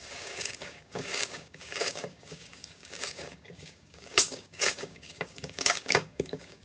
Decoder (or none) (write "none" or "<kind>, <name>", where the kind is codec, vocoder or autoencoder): codec, DAC